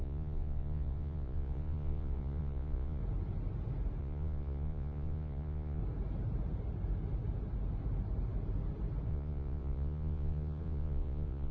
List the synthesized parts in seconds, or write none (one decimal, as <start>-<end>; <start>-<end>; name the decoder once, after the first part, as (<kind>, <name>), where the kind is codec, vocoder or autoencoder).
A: 0.0-3.0 (vocoder, Vocos); 4.0-5.8; 9.1-11.5